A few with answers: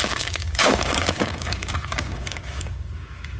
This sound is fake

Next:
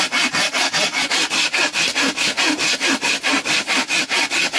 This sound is real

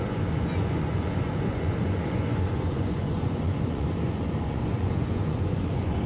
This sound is fake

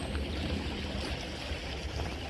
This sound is real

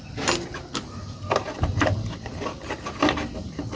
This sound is real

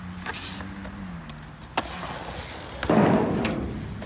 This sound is real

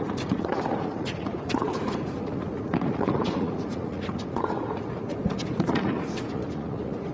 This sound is fake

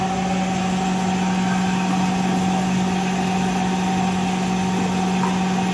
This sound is real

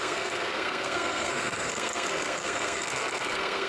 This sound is fake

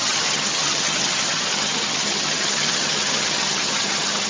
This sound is fake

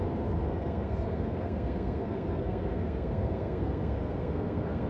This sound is fake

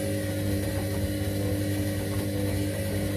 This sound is real